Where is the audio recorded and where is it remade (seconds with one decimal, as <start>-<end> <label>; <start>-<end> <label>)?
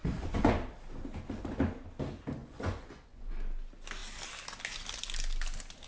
0.0-0.5 remade; 0.5-2.4 recorded; 2.4-3.3 remade; 3.3-5.9 recorded